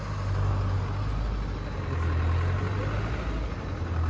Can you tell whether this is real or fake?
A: real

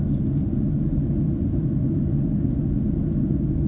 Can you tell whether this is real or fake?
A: real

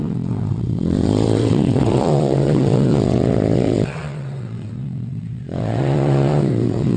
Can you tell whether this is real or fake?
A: fake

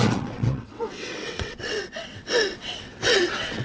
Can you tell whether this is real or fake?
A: fake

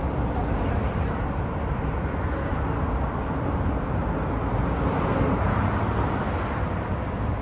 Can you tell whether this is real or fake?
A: real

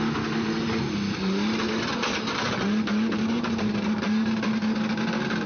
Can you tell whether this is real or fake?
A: real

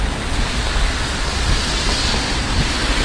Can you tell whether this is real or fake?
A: real